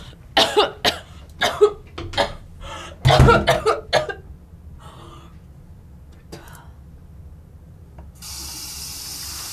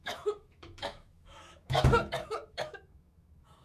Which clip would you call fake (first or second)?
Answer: second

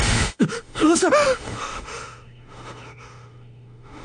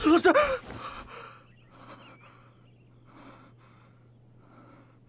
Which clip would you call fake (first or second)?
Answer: first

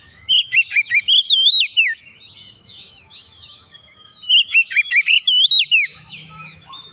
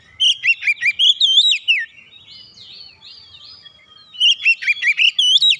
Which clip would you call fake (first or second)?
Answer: first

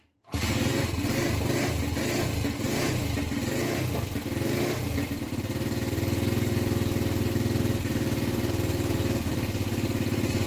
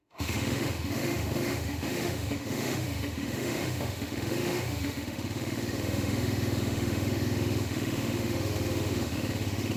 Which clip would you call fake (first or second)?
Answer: second